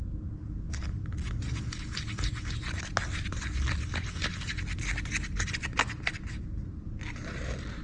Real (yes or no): yes